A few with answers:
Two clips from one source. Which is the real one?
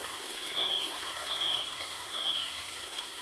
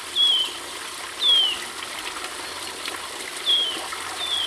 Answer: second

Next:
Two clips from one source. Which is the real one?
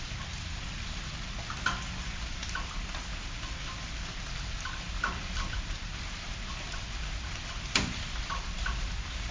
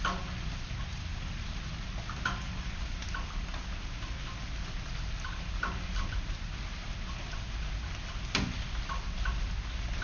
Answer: second